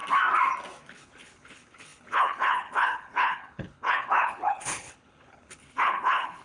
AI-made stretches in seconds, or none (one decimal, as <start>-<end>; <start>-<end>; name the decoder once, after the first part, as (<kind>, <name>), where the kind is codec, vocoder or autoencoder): 0.9-6.4 (codec, HILCodec)